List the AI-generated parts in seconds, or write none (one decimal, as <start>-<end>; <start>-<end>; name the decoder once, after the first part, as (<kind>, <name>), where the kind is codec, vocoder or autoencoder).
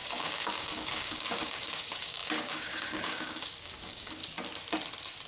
0.0-4.2 (codec, DAC)